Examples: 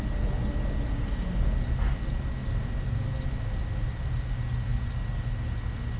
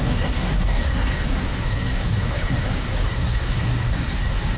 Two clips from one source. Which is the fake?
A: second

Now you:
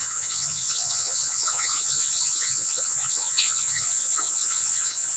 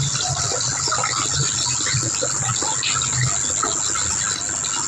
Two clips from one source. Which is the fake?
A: first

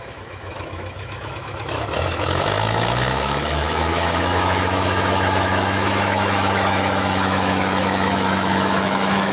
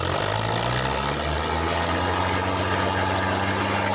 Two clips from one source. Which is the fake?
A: first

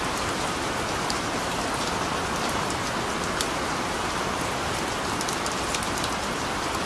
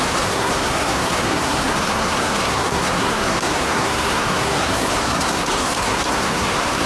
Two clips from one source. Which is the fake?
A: second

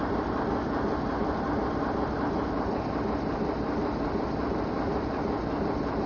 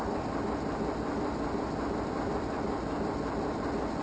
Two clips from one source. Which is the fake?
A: first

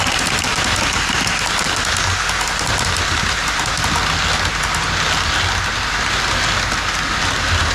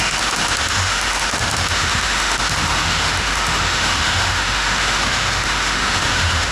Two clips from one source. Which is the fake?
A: second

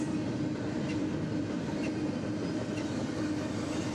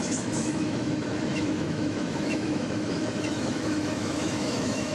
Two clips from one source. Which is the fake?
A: second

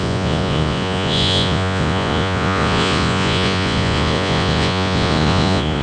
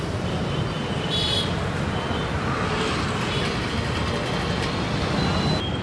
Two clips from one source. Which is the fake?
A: first